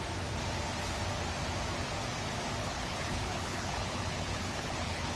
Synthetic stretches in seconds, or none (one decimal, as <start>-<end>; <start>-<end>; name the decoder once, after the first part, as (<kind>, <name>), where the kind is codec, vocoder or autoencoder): 2.6-5.2 (codec, HILCodec)